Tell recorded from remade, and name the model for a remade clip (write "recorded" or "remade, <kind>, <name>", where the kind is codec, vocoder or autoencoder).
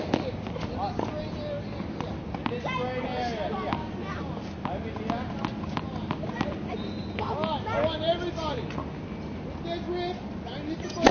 recorded